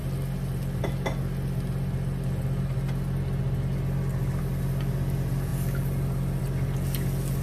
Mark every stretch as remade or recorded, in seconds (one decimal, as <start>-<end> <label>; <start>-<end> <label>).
0.0-7.4 recorded